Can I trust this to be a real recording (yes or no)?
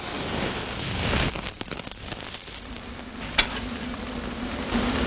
yes